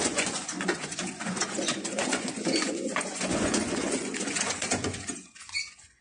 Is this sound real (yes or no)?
no